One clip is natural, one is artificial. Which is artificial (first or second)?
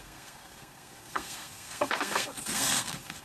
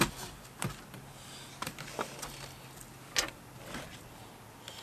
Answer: first